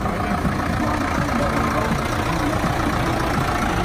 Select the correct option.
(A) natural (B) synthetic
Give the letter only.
A